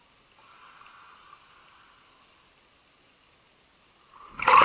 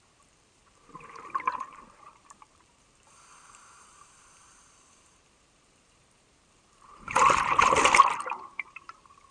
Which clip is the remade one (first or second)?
second